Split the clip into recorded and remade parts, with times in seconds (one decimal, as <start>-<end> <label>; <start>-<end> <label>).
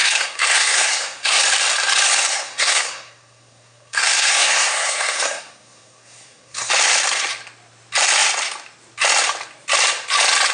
0.0-1.4 remade; 1.4-2.3 recorded; 2.3-6.7 remade; 6.7-10.5 recorded